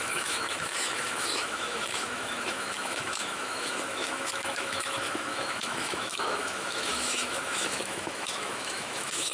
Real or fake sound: fake